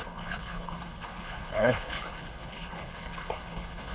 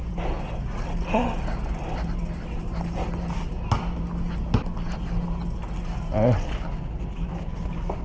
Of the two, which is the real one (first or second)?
second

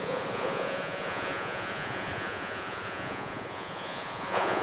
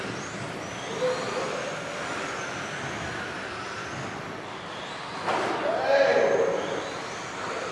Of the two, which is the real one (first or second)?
second